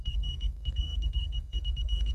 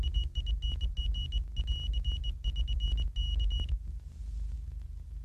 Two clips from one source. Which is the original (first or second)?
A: second